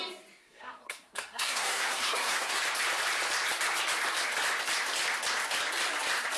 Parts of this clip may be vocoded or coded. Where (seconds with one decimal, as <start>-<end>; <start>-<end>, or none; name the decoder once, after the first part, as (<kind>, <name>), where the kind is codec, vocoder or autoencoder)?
0.4-2.6 (codec, SNAC)